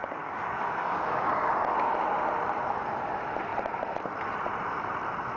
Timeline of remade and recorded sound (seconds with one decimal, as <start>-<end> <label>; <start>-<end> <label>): 0.0-1.5 remade; 1.5-5.4 recorded